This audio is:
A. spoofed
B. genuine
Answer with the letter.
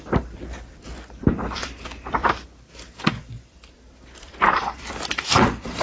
A